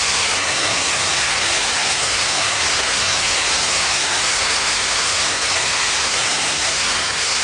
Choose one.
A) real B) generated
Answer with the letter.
B